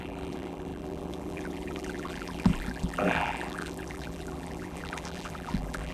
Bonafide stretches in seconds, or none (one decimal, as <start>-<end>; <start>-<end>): none